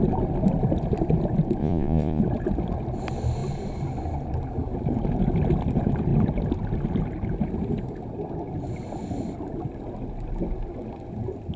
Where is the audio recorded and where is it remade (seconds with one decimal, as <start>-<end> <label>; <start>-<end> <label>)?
0.0-1.6 recorded; 1.6-2.2 remade; 2.2-11.6 recorded